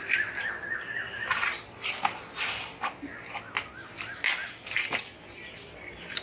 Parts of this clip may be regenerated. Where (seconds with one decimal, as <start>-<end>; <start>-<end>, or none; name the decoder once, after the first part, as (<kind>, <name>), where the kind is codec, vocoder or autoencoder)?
4.4-6.2 (vocoder, BigVGAN v2)